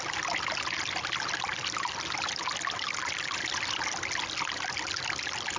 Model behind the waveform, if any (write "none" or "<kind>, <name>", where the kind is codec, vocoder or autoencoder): none